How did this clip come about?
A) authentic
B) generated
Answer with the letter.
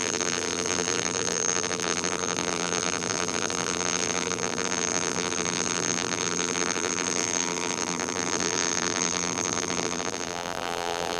B